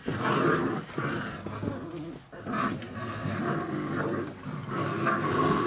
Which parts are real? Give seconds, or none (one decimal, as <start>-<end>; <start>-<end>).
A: 0.0-2.8; 3.4-4.8